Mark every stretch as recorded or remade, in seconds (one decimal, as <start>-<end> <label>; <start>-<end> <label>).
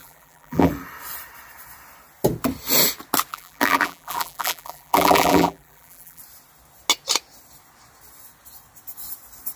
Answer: 0.0-0.7 remade; 0.7-3.3 recorded; 3.3-6.2 remade; 6.2-9.6 recorded